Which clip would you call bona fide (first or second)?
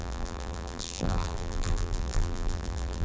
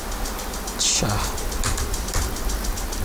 second